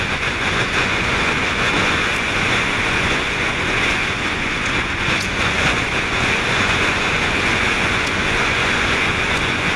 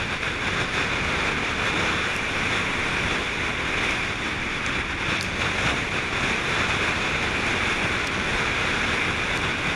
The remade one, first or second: first